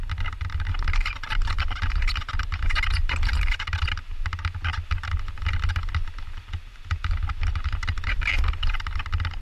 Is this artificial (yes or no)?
no